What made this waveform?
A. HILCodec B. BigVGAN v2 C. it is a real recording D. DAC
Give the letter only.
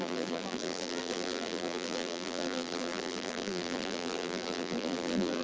B